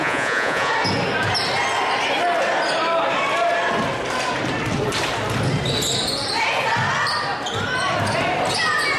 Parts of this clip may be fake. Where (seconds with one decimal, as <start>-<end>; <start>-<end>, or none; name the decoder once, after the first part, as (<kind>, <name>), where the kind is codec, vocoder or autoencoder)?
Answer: 0.0-0.7 (vocoder, Vocos)